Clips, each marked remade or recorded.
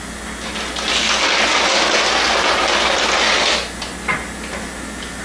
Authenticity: recorded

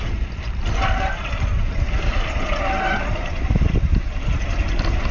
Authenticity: recorded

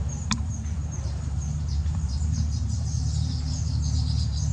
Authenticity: remade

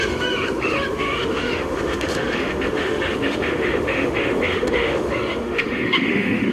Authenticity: remade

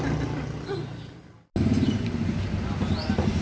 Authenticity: recorded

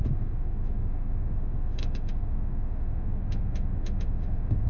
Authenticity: remade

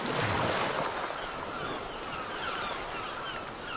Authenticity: recorded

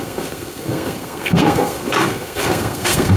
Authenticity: remade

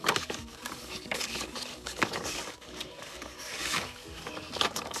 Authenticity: remade